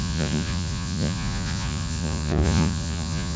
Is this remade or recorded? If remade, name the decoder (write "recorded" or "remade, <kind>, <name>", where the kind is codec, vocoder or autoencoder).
remade, vocoder, Vocos